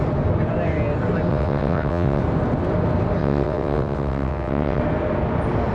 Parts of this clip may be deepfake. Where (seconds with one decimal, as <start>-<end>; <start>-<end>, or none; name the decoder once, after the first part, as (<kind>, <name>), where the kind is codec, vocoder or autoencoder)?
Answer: 1.3-2.2 (vocoder, WaveNeXt); 3.2-4.8